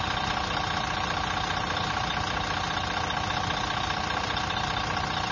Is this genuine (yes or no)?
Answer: yes